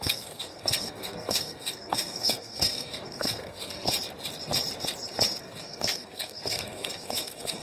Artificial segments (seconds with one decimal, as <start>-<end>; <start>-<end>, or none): 0.0-3.9; 5.4-7.6